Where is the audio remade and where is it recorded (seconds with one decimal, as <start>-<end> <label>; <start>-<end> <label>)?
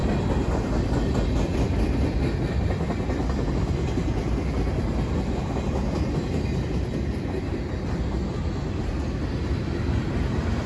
0.0-10.7 recorded